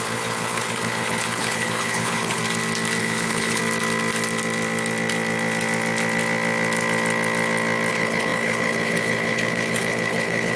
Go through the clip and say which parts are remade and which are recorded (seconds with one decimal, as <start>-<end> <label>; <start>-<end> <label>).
0.0-2.4 remade; 2.4-3.0 recorded; 3.0-3.6 remade; 3.6-7.9 recorded; 7.9-10.6 remade